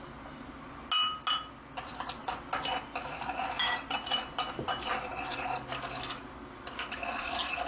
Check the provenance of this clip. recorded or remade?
recorded